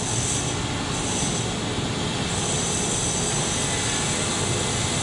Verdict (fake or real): real